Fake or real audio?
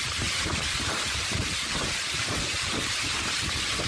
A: fake